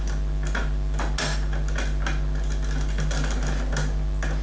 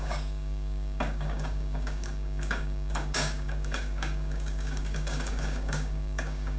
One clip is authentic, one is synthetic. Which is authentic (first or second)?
first